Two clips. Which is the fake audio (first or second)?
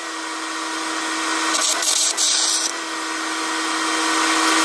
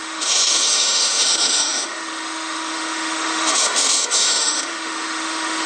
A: second